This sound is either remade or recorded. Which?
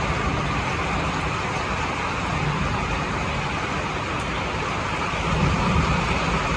remade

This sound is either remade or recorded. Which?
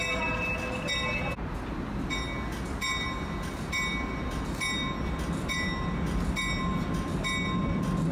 recorded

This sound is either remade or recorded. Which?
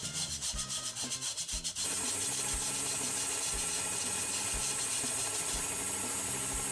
recorded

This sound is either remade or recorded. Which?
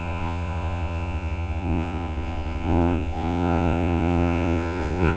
remade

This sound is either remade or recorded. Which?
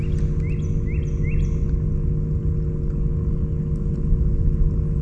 recorded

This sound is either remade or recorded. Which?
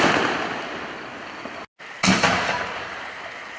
recorded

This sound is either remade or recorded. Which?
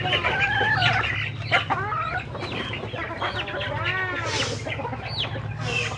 recorded